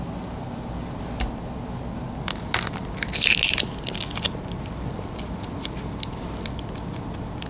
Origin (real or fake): real